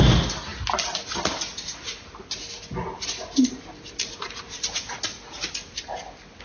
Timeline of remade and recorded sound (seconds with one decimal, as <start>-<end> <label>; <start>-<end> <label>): 0.0-6.4 recorded